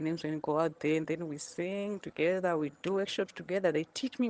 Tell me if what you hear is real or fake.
fake